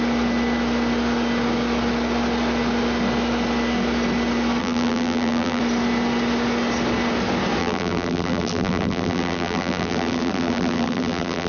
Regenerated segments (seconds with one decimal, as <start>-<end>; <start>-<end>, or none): 4.6-5.6; 7.6-11.5